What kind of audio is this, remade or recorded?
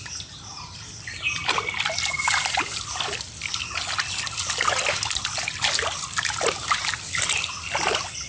recorded